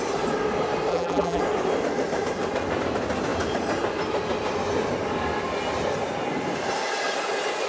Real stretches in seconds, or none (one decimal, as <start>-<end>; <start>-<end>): 0.0-0.9; 1.4-7.7